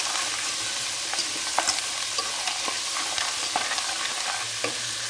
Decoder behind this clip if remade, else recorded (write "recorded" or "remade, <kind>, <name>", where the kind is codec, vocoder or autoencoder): recorded